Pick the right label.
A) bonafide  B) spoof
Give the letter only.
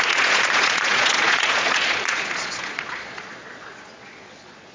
B